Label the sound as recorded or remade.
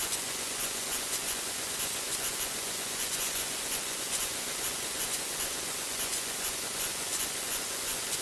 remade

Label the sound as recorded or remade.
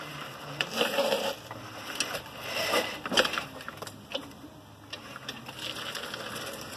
recorded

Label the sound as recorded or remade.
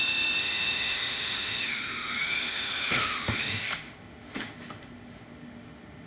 remade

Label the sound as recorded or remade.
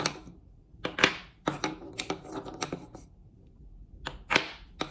recorded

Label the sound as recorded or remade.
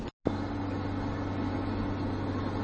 recorded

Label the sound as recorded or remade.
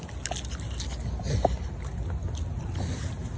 recorded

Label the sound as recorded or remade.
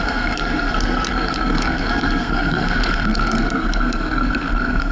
remade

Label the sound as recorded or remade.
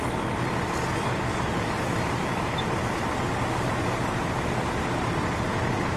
recorded